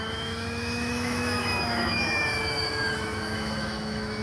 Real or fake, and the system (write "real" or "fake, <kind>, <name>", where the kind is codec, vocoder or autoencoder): fake, autoencoder, DAC-VAE